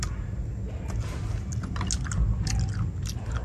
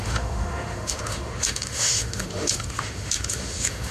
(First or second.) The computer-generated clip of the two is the second